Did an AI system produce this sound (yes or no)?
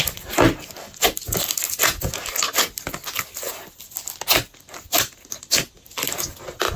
no